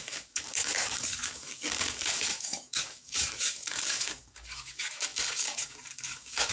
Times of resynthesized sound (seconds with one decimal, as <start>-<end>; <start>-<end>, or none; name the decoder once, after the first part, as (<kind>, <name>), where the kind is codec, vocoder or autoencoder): 0.0-6.5 (codec, DAC)